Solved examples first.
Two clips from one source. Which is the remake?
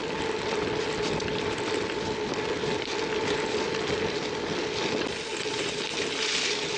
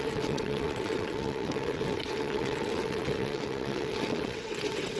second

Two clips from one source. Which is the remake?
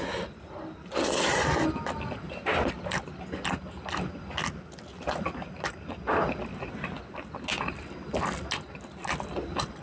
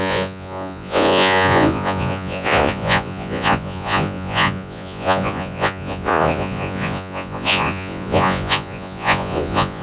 second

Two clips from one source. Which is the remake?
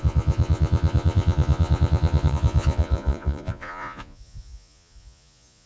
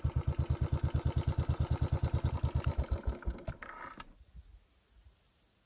first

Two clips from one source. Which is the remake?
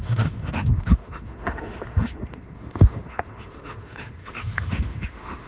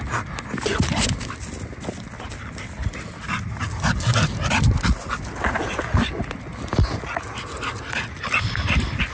first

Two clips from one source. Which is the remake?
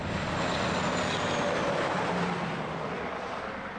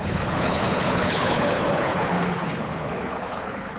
second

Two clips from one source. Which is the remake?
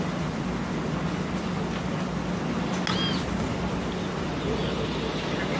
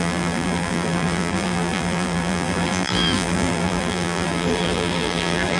second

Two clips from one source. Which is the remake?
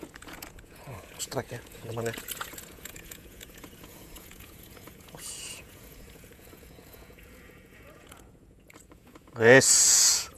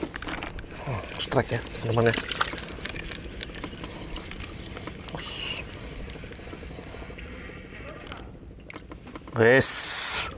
first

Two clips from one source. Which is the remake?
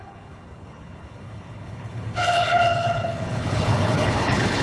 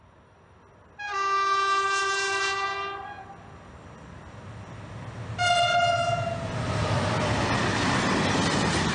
first